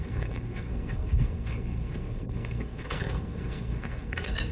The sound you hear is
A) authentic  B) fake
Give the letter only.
B